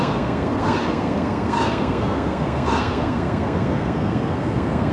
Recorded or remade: remade